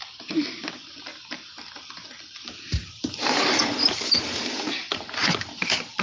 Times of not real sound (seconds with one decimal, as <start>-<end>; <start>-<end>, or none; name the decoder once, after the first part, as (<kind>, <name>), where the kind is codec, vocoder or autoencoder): 0.0-1.1 (vocoder, BigVGAN v2); 3.8-6.0